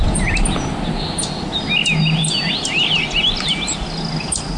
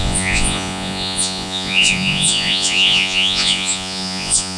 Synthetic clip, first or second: second